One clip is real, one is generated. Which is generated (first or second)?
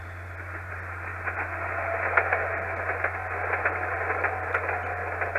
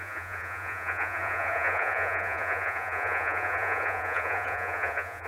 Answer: second